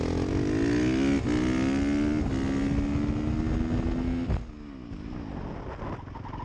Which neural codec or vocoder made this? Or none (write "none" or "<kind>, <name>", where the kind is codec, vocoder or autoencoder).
none